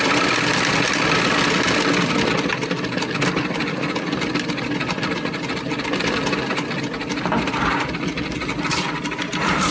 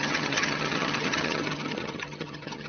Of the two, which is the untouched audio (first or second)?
first